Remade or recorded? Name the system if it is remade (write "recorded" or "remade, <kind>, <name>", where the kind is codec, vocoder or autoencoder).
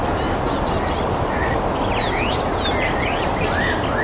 recorded